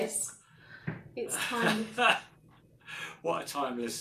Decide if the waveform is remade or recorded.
recorded